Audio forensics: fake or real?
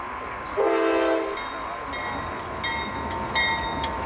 real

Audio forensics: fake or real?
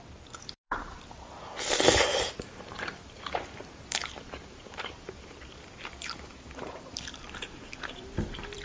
fake